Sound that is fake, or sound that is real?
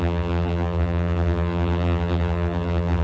fake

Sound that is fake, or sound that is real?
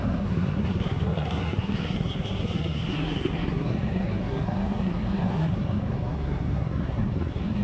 fake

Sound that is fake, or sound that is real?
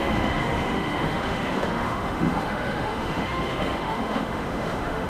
fake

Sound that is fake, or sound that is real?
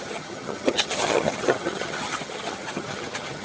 fake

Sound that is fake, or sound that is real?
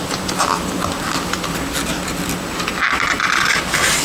real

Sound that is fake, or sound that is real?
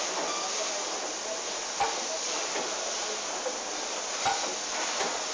real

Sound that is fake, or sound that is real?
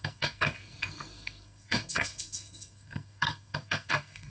fake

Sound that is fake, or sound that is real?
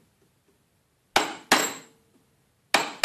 real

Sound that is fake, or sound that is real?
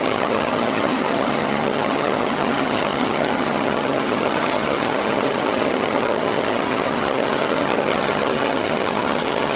fake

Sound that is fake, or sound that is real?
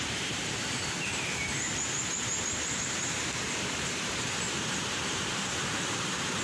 fake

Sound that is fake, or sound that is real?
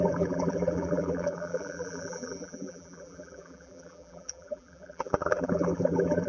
fake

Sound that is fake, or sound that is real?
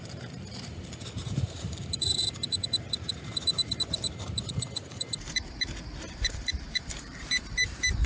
fake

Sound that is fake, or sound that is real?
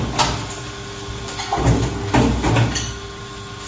real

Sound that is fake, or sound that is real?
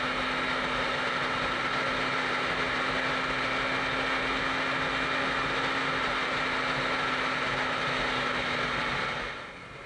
real